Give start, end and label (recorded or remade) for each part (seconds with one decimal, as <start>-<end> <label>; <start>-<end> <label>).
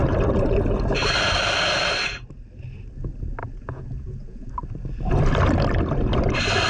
0.0-3.4 recorded; 3.4-4.5 remade; 4.5-6.7 recorded